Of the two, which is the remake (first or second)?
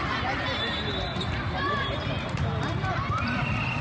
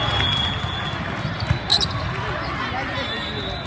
first